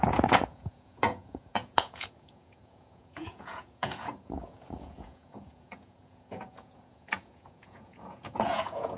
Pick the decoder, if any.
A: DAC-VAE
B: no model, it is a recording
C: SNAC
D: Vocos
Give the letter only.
D